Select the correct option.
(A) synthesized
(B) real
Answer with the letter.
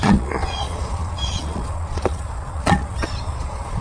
A